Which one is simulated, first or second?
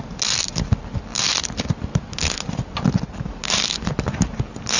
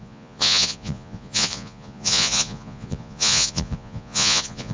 second